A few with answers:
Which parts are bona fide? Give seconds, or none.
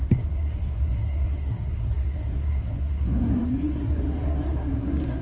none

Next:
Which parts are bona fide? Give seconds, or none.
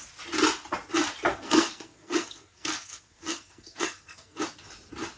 0.0-1.3; 4.4-5.2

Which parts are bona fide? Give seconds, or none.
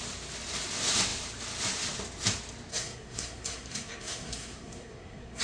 0.0-2.7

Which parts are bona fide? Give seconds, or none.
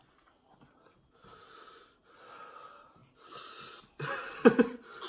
0.0-5.1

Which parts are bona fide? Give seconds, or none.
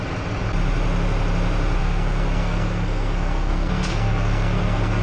0.0-1.8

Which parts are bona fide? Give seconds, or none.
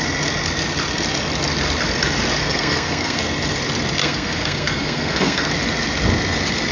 0.0-2.4; 3.2-4.0; 5.5-6.7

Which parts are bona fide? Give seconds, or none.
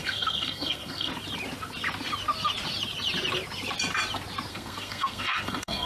1.1-4.5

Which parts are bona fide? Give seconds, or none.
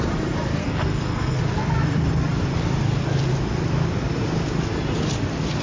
0.0-0.6; 1.4-5.6